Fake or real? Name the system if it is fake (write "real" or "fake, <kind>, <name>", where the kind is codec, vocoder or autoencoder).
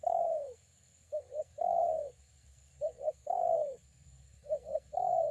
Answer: fake, codec, SNAC